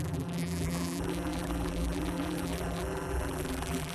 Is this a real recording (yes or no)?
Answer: no